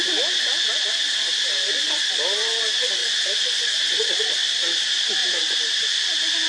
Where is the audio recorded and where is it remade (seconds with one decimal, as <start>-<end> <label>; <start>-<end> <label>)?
0.0-6.5 recorded